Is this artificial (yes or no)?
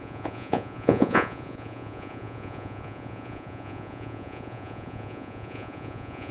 yes